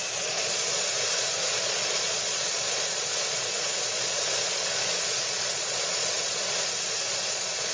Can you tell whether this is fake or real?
fake